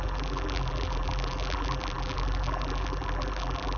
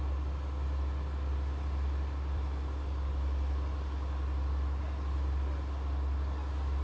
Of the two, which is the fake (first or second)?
first